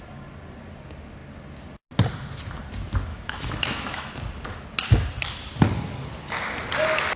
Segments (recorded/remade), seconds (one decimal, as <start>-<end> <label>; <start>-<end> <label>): 0.0-3.1 recorded; 3.1-4.1 remade; 4.1-7.2 recorded